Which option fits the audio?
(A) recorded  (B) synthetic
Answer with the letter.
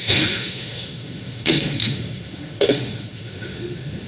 B